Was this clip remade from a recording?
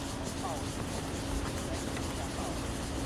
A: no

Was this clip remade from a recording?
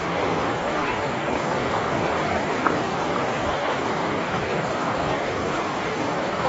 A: yes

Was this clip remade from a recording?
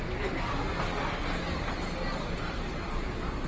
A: no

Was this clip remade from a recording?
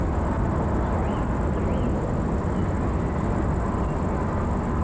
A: no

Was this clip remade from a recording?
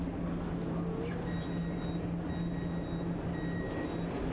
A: no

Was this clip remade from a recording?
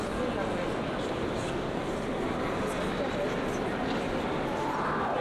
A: no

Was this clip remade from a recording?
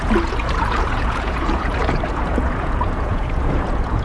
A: yes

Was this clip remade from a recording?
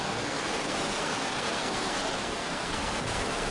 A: yes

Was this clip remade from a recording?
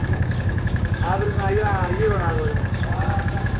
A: yes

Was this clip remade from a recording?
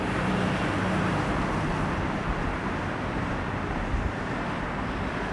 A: no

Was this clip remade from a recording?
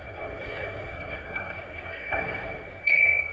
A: yes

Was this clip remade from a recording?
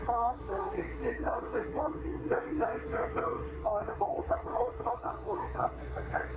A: yes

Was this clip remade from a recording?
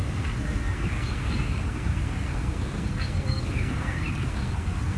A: yes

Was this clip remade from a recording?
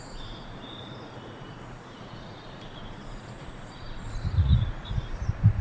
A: yes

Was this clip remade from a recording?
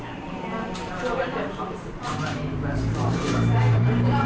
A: yes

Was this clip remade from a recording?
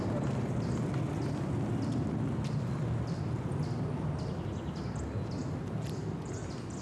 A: no